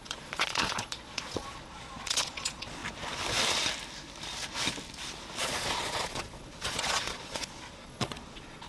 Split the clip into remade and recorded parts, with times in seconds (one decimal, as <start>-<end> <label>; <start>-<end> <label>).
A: 0.0-2.8 remade; 2.8-5.4 recorded; 5.4-8.7 remade

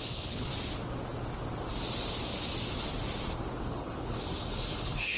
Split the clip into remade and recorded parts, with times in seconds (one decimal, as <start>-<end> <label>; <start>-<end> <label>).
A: 0.0-0.5 remade; 0.5-3.6 recorded; 3.6-5.2 remade

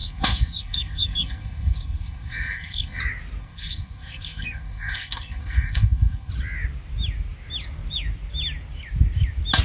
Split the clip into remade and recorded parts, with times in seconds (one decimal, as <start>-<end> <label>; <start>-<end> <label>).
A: 0.0-3.0 remade; 3.0-3.4 recorded; 3.4-6.3 remade; 6.3-9.6 recorded

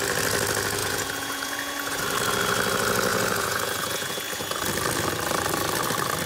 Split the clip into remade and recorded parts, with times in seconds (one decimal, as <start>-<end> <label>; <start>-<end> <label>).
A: 0.0-0.8 recorded; 0.8-2.0 remade; 2.0-3.1 recorded; 3.1-4.6 remade; 4.6-6.3 recorded

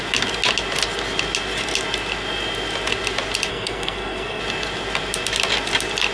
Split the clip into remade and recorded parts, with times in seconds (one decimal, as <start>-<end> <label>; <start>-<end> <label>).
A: 0.0-3.5 recorded; 3.5-4.4 remade; 4.4-6.1 recorded

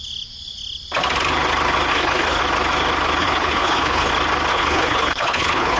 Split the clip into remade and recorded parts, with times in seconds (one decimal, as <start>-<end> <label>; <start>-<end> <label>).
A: 0.0-1.9 recorded; 1.9-2.4 remade; 2.4-3.2 recorded; 3.2-4.1 remade; 4.1-4.5 recorded; 4.5-5.8 remade

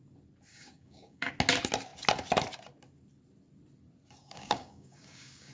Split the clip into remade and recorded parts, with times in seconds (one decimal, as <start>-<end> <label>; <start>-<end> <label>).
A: 0.0-0.5 recorded; 0.5-1.3 remade; 1.3-4.2 recorded; 4.2-5.5 remade

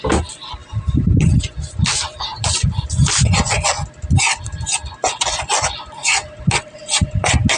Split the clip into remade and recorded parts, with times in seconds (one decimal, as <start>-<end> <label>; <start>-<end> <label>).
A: 0.0-2.3 recorded; 2.3-3.3 remade; 3.3-6.0 recorded; 6.0-6.8 remade; 6.8-7.6 recorded